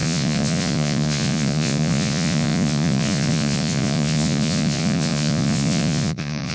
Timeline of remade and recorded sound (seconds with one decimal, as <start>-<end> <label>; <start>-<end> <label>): 0.0-6.5 remade